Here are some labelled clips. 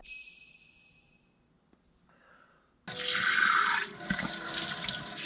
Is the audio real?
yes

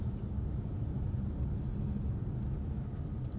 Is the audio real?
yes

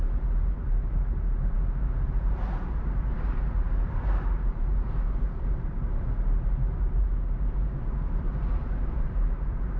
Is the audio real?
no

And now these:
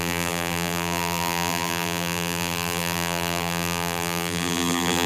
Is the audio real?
no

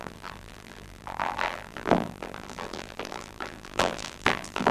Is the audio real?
no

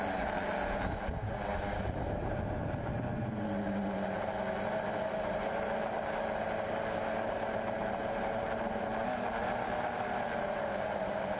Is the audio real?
yes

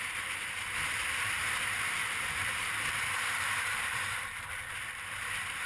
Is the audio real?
no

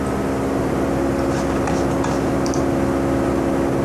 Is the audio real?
yes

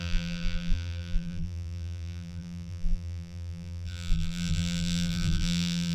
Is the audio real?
no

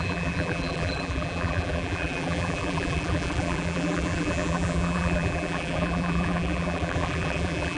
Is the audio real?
no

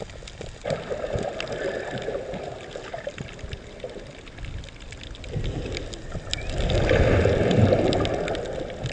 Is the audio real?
yes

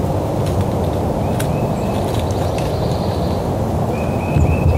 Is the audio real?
yes